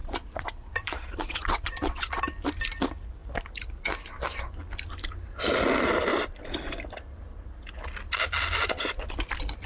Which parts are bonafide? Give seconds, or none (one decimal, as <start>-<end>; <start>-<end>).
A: 2.2-9.7